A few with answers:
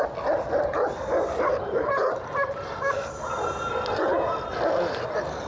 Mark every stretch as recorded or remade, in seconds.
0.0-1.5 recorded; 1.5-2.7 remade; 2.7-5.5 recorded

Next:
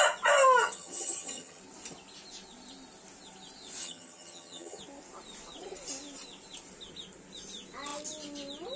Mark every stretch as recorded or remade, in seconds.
0.0-0.6 recorded; 0.6-1.6 remade; 1.6-3.8 recorded; 3.8-4.8 remade; 4.8-8.8 recorded